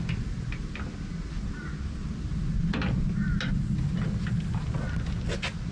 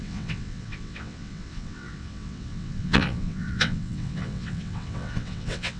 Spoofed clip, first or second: second